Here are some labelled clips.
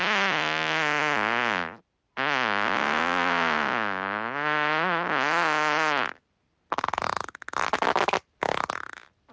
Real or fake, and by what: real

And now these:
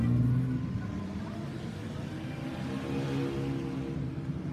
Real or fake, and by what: real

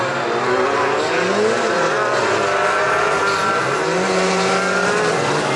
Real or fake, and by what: real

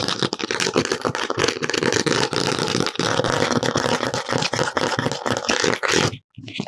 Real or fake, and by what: real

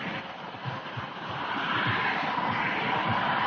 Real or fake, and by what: real